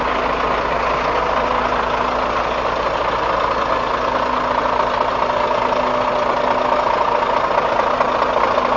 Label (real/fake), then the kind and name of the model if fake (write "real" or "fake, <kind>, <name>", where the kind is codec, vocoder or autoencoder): real